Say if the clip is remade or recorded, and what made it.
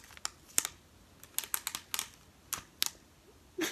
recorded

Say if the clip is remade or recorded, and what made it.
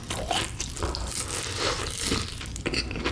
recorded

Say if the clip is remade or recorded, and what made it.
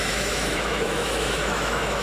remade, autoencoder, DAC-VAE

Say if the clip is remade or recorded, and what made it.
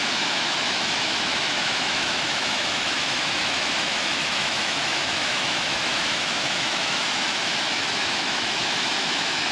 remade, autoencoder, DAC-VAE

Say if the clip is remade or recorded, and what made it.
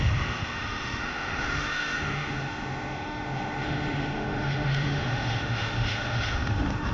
remade, autoencoder, DAC-VAE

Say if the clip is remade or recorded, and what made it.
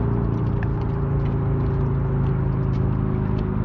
recorded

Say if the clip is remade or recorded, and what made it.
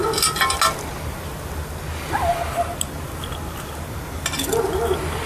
recorded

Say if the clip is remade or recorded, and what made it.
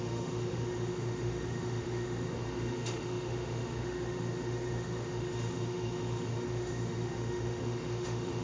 remade, autoencoder, DAC-VAE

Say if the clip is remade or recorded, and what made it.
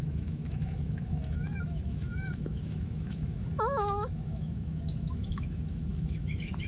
remade, autoencoder, DAC-VAE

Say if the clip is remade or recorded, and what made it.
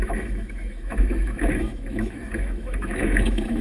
remade, autoencoder, DAC-VAE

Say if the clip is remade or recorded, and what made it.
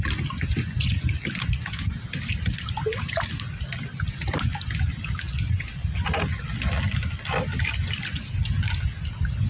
recorded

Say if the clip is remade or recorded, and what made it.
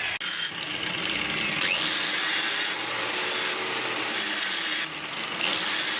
recorded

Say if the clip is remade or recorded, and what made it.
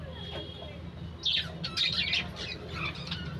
recorded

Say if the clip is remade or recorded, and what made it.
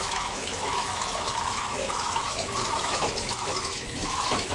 remade, autoencoder, DAC-VAE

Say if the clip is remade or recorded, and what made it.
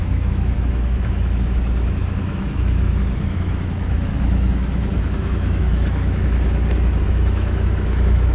remade, autoencoder, DAC-VAE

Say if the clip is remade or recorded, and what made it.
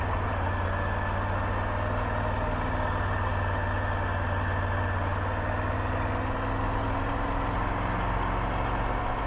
recorded